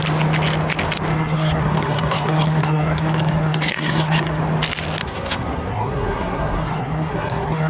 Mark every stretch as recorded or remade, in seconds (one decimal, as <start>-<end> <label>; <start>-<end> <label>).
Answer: 0.0-1.1 recorded; 1.1-4.4 remade; 4.4-5.0 recorded; 5.0-7.7 remade